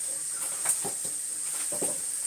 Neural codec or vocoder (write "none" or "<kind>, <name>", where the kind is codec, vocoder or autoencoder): none